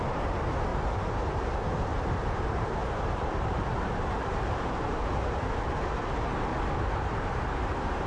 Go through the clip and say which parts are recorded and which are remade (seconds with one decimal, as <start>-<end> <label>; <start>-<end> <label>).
0.0-0.7 remade; 0.7-1.4 recorded; 1.4-6.5 remade; 6.5-7.0 recorded; 7.0-8.1 remade